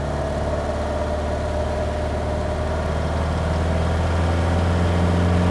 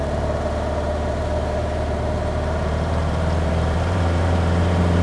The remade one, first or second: second